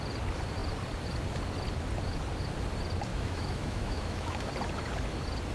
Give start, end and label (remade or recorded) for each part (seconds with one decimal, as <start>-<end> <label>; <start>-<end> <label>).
0.0-3.1 recorded; 3.1-4.5 remade; 4.5-5.5 recorded